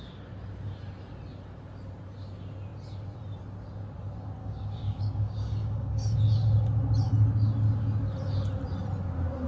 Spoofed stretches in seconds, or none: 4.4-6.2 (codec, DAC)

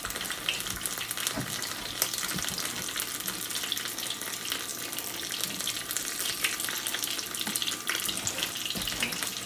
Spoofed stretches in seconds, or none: none

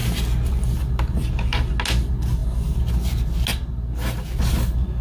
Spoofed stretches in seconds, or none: none

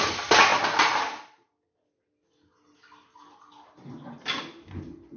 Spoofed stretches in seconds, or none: none

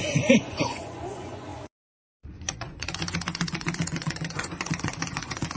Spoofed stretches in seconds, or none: 0.0-5.6 (vocoder, Vocos)